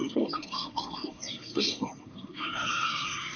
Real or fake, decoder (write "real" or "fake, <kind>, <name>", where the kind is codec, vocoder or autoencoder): fake, codec, SNAC